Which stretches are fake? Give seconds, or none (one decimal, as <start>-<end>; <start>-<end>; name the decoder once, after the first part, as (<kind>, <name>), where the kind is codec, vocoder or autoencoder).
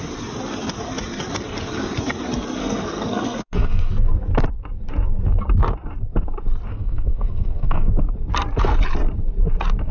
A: 2.6-3.9 (codec, SNAC); 6.7-7.9